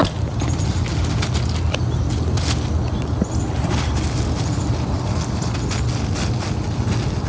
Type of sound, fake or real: real